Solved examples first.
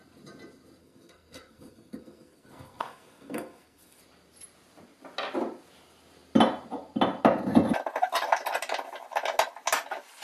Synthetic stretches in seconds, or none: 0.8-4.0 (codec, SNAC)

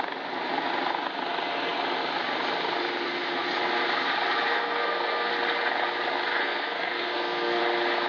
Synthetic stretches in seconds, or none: 4.5-5.3 (codec, SNAC); 6.4-7.6

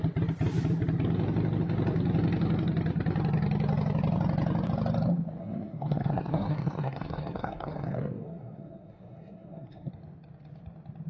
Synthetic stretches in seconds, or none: 5.4-9.9 (codec, SNAC)

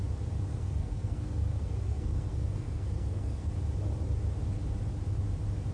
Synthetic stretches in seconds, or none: 0.5-3.5 (codec, SNAC)

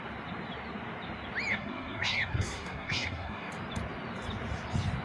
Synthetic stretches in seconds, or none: 1.5-3.5 (codec, SNAC)